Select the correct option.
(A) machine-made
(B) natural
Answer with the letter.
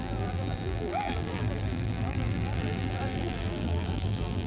A